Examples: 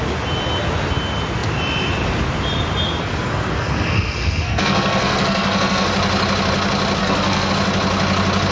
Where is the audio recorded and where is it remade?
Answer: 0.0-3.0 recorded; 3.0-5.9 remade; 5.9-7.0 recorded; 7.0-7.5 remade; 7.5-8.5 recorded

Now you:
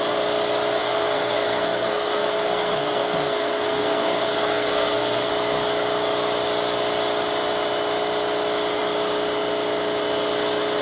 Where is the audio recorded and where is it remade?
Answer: 0.0-0.8 recorded; 0.8-5.3 remade; 5.3-10.8 recorded

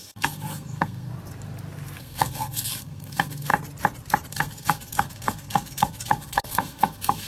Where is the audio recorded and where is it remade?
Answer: 0.0-1.1 remade; 1.1-2.0 recorded; 2.0-3.5 remade; 3.5-4.3 recorded; 4.3-7.3 remade

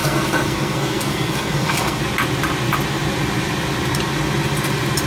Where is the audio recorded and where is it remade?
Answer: 0.0-2.0 remade; 2.0-5.1 recorded

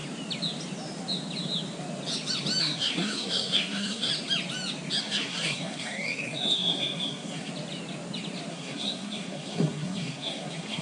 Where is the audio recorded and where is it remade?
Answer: 0.0-2.6 recorded; 2.6-4.1 remade; 4.1-5.0 recorded; 5.0-7.5 remade; 7.5-8.5 recorded; 8.5-10.8 remade

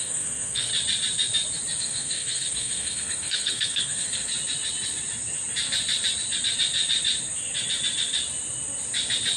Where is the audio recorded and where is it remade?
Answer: 0.0-0.7 remade; 0.7-1.8 recorded; 1.8-4.3 remade; 4.3-9.4 recorded

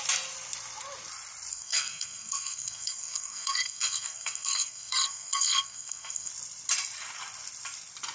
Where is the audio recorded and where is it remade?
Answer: 0.0-1.5 recorded; 1.5-6.3 remade; 6.3-8.1 recorded

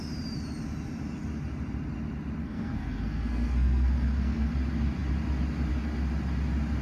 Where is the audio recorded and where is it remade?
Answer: 0.0-2.4 recorded; 2.4-4.5 remade; 4.5-6.8 recorded